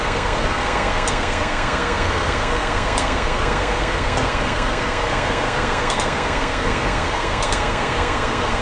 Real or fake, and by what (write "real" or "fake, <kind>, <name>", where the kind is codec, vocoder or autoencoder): fake, codec, SNAC